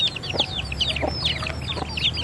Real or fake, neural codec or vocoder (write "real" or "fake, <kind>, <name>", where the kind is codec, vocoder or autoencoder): real